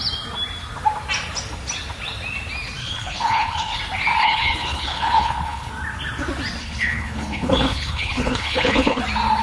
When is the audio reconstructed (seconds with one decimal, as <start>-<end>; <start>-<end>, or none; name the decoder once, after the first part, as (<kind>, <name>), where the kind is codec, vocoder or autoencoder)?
2.8-3.8 (codec, HILCodec); 4.2-5.7; 6.6-9.0

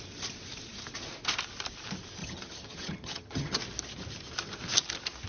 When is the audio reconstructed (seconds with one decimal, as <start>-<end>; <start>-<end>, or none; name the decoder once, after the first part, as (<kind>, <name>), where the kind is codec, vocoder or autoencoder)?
2.2-3.6 (vocoder, HiFi-GAN)

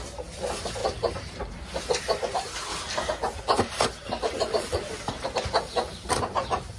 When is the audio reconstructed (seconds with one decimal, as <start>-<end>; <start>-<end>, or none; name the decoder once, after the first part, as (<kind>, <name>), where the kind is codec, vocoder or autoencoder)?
0.0-0.8 (vocoder, BigVGAN v2); 2.0-2.7; 3.6-6.8

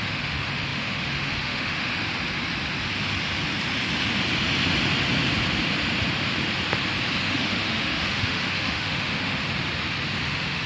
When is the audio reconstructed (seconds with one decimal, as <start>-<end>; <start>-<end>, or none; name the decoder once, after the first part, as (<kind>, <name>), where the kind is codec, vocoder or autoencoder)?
0.0-2.0 (autoencoder, DAC-VAE); 7.2-9.4; 10.2-10.7

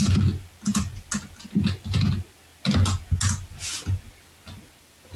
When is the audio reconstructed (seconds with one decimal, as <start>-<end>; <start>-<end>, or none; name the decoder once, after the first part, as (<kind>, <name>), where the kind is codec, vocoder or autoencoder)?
none

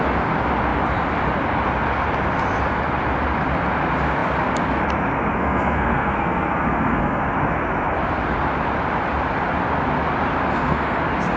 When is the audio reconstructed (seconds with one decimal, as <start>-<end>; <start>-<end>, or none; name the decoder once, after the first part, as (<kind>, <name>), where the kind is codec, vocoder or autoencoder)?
5.3-7.2 (codec, SNAC); 10.5-11.0

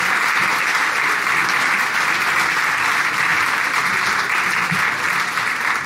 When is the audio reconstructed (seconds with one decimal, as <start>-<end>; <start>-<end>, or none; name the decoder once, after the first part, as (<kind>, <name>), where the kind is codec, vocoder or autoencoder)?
none